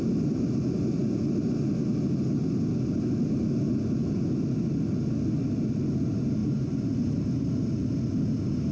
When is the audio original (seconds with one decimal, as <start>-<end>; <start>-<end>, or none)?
0.0-6.4; 7.9-8.7